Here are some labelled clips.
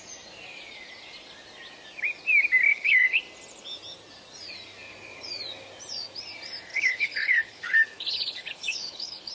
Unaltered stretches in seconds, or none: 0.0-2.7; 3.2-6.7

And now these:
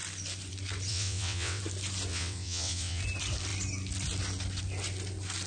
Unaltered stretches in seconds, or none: 0.0-0.9; 1.6-2.1; 3.0-5.5

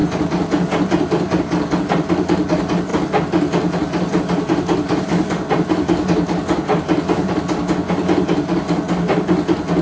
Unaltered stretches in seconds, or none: 0.0-9.8